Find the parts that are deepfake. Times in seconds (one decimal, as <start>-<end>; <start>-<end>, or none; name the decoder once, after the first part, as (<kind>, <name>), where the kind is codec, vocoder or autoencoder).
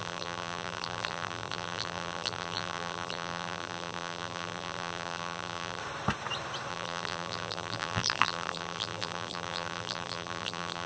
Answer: 0.0-5.8 (vocoder, BigVGAN v2); 6.7-10.9